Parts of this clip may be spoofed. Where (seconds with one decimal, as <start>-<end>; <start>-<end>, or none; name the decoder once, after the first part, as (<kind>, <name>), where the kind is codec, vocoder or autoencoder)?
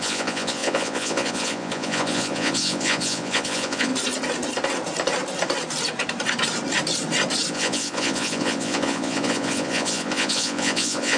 0.0-3.9 (vocoder, Vocos); 7.5-11.2